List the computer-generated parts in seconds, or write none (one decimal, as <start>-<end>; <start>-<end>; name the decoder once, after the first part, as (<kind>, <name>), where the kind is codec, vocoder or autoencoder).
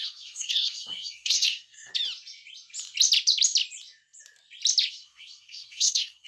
0.0-1.9 (codec, SNAC); 4.9-6.3